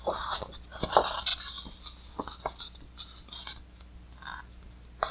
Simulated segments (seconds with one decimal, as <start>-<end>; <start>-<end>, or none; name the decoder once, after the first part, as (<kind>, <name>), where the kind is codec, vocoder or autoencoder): none